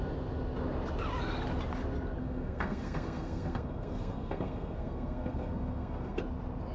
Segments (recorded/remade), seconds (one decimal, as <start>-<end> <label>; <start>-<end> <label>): 0.0-2.2 recorded; 2.2-6.2 remade; 6.2-6.7 recorded